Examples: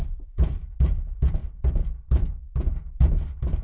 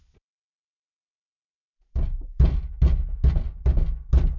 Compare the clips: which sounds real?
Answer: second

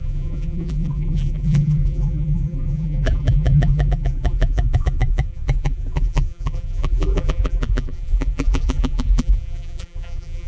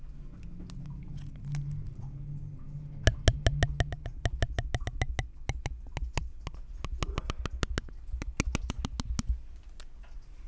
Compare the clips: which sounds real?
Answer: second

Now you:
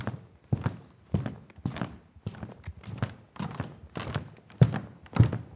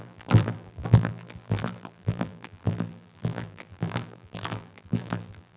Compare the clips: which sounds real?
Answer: first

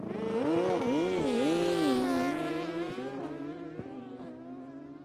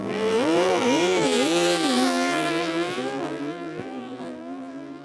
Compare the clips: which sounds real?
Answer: first